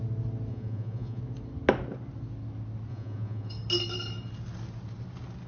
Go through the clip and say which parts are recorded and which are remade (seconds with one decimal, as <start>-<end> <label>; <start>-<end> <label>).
0.0-0.5 recorded; 0.5-1.2 remade; 1.2-2.9 recorded; 2.9-3.5 remade; 3.5-5.5 recorded